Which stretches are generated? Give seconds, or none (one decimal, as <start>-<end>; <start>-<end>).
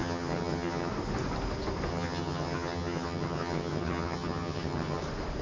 0.0-0.9; 1.9-5.0